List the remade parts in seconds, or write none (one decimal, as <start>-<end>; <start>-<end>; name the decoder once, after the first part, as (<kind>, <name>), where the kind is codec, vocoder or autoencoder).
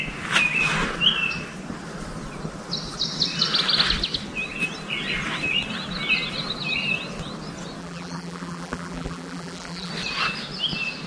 7.8-9.9 (vocoder, BigVGAN v2)